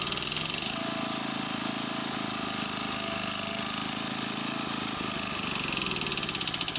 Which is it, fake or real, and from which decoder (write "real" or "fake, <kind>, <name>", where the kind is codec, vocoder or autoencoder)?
real